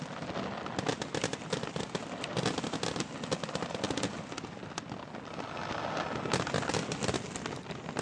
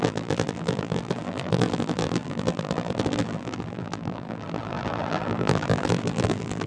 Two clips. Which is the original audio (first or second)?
first